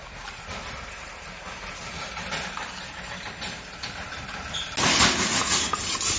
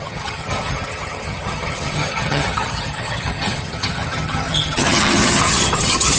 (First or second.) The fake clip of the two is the second